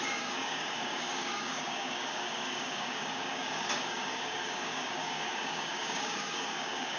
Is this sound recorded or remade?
remade